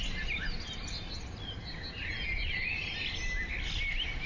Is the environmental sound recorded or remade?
recorded